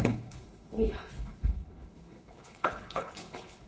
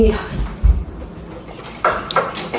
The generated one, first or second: first